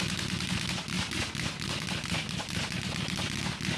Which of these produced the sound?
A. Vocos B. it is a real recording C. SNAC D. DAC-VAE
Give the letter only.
B